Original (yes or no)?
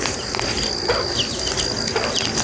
yes